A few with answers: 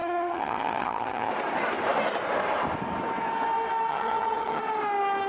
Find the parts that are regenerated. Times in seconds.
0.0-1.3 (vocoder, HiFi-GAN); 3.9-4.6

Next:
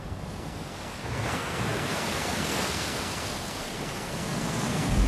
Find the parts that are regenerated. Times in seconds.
0.0-5.1 (codec, SNAC)

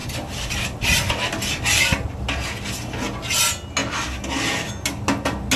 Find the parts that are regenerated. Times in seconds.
3.8-4.7 (vocoder, BigVGAN v2)

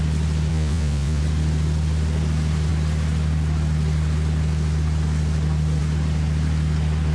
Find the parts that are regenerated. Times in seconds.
0.5-1.2 (vocoder, Vocos)

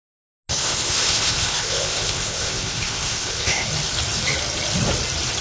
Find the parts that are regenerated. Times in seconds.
0.5-3.7 (codec, ZipCodec)

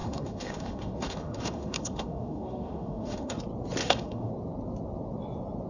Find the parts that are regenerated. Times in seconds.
0.0-3.4 (autoencoder, DAC-VAE); 3.8-4.3

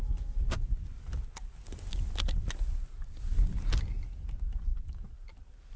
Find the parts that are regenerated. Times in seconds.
none